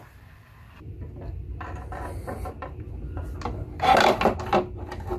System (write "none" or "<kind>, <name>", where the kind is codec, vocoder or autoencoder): none